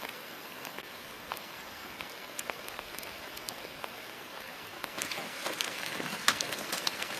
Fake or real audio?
fake